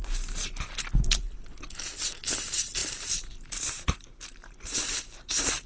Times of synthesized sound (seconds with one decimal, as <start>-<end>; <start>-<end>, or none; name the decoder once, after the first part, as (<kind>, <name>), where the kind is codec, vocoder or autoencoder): 2.8-5.7 (vocoder, BigVGAN v2)